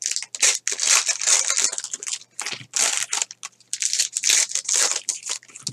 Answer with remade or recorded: recorded